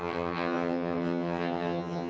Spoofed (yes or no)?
yes